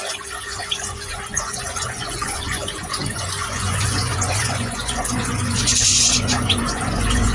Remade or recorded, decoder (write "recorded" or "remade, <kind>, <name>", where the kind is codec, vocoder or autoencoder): remade, vocoder, Vocos